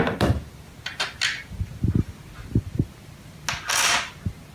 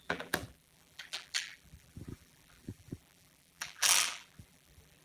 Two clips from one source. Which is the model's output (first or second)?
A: second